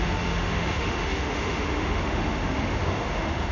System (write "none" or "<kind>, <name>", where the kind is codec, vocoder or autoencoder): autoencoder, DAC-VAE